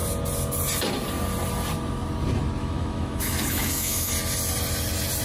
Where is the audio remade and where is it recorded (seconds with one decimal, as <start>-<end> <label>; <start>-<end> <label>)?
0.0-2.6 recorded; 2.6-4.1 remade; 4.1-5.2 recorded